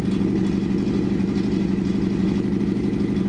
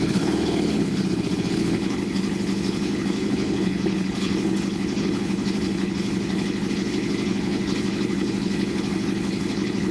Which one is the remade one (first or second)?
second